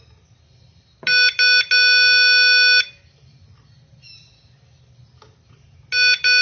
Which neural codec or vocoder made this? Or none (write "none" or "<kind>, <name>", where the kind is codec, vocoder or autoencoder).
none